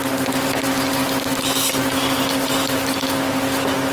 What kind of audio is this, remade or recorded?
recorded